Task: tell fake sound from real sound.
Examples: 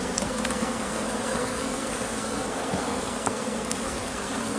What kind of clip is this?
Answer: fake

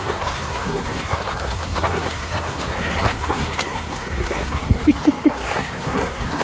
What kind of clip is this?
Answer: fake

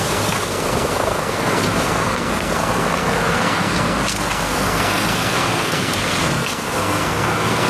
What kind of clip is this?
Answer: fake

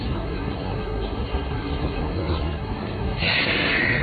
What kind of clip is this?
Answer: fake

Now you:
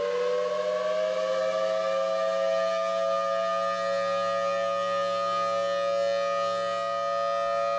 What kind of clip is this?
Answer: real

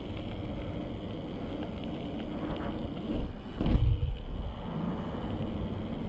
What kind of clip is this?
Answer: real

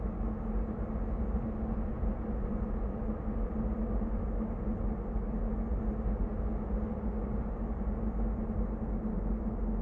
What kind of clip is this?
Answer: real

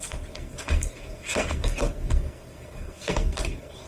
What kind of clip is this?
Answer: fake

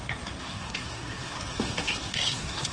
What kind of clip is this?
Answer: fake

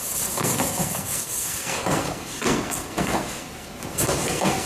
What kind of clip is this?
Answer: fake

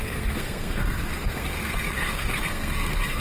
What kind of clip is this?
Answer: fake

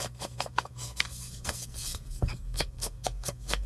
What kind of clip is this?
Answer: fake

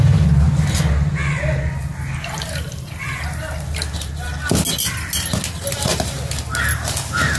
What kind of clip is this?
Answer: real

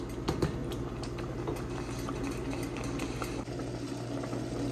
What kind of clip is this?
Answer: real